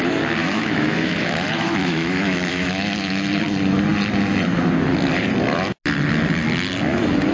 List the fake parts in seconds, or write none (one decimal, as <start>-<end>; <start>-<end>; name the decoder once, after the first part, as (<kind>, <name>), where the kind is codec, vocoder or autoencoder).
0.4-3.4 (autoencoder, DAC-VAE)